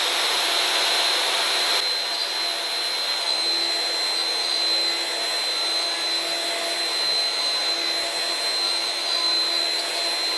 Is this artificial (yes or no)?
no